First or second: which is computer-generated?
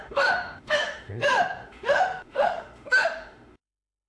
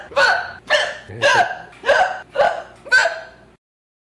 first